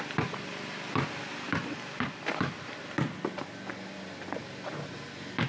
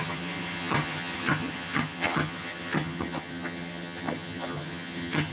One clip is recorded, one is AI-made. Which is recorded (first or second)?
first